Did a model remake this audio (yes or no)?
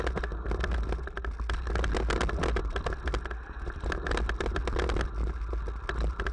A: no